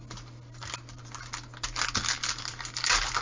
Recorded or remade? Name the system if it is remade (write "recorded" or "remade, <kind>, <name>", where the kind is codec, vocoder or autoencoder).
recorded